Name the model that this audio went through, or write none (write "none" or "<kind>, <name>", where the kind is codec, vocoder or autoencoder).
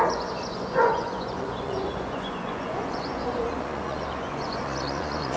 vocoder, Vocos